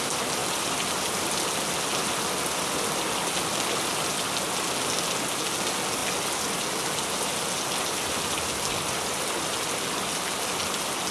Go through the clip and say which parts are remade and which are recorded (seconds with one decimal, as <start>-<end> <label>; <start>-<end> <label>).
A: 0.0-11.1 recorded